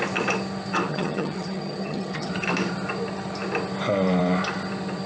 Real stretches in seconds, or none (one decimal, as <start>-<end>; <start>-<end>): 0.0-0.9; 2.3-5.1